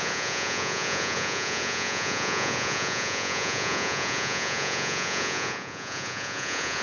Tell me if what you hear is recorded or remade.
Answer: remade